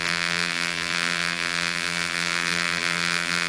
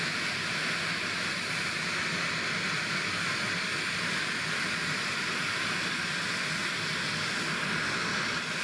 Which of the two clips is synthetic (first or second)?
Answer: first